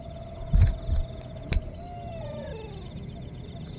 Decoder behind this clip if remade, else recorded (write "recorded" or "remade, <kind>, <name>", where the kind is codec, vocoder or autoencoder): recorded